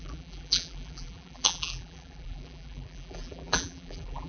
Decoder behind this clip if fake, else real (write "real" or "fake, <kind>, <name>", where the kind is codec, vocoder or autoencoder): fake, vocoder, BigVGAN v2